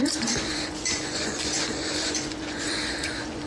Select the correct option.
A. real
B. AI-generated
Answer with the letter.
B